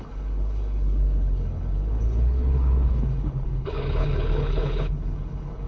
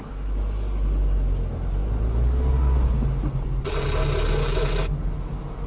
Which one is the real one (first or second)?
second